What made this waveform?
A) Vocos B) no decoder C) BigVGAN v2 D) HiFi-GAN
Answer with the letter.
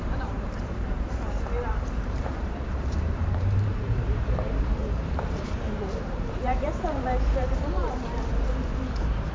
C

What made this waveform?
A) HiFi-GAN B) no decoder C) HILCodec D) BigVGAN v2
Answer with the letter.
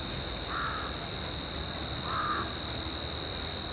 B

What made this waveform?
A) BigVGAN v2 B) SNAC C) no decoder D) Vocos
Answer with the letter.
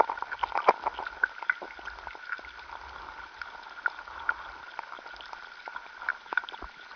C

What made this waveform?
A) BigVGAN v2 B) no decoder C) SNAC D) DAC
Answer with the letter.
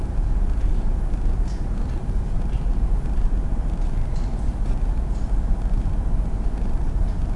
A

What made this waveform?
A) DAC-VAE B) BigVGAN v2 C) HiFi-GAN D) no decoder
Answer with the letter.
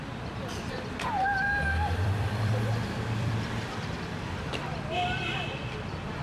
B